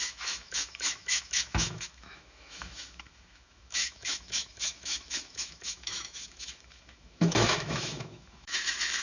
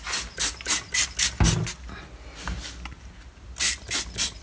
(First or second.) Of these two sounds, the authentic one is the second